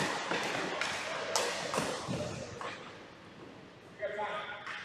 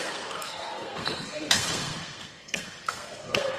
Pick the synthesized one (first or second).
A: second